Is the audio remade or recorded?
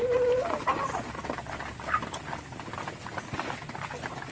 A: recorded